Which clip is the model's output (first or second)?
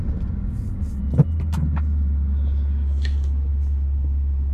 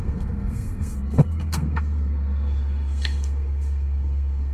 second